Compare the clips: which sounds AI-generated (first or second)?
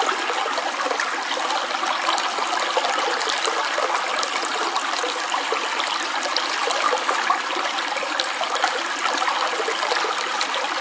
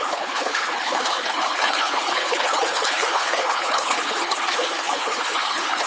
second